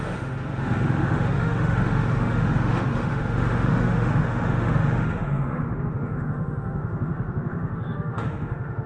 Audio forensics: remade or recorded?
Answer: remade